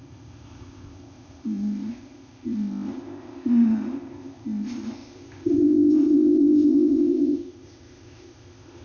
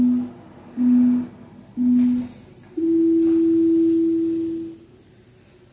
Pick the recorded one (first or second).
second